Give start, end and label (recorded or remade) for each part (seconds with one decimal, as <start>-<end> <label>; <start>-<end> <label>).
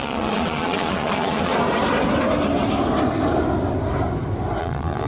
0.0-1.5 remade; 1.5-4.6 recorded; 4.6-5.1 remade